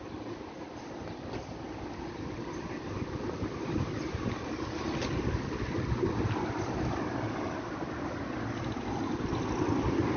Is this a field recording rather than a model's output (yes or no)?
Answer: yes